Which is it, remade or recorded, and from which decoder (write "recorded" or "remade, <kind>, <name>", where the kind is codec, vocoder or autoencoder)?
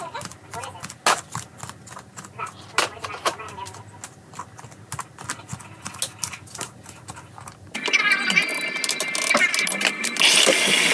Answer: recorded